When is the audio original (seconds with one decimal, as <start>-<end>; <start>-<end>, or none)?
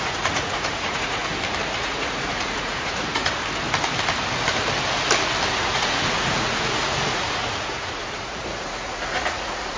1.2-1.8; 3.4-5.5